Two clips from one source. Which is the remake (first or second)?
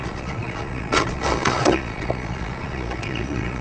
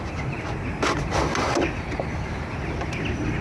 first